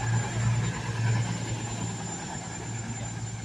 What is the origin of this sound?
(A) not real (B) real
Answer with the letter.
B